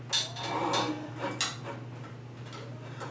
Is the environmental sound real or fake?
real